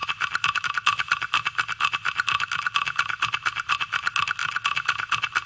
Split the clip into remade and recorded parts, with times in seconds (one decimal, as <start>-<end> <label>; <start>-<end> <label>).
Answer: 0.0-5.5 recorded